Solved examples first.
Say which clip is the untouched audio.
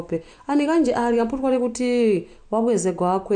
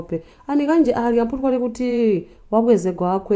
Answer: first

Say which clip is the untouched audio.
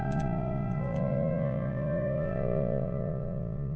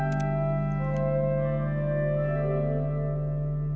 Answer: second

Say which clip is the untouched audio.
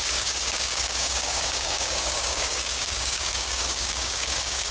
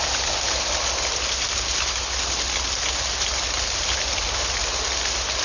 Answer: second